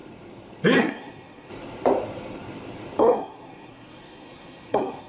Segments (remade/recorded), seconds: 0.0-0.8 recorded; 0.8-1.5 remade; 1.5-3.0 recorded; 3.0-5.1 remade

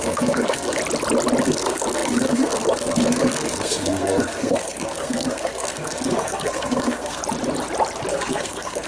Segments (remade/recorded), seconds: 0.0-0.8 remade; 0.8-1.4 recorded; 1.4-7.2 remade; 7.2-8.1 recorded; 8.1-8.9 remade